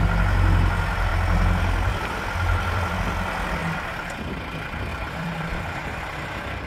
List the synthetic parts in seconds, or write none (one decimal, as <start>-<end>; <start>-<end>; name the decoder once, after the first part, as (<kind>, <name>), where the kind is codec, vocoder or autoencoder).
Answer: 4.9-6.7 (vocoder, BigVGAN v2)